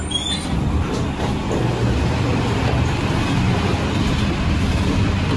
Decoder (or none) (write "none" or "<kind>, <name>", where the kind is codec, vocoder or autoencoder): none